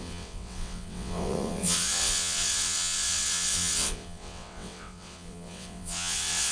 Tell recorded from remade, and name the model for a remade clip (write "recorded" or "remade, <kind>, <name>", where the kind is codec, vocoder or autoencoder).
remade, vocoder, WaveNeXt